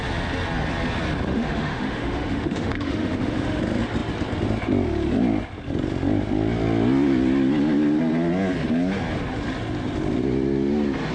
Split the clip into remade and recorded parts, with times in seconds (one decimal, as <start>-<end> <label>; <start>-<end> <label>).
0.0-1.3 recorded; 1.3-3.6 remade; 3.6-11.1 recorded